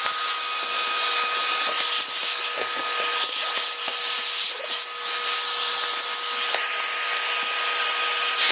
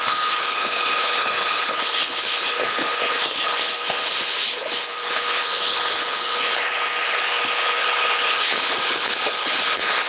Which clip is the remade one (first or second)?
second